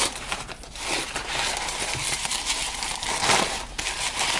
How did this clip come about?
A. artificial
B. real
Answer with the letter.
B